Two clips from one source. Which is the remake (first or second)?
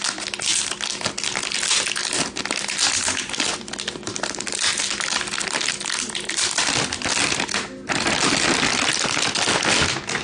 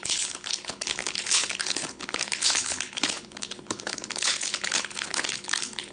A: second